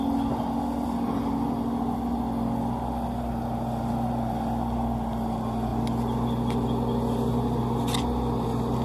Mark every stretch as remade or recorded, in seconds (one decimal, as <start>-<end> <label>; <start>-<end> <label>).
0.0-8.8 recorded